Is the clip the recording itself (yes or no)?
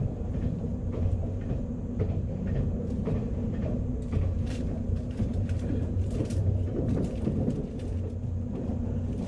no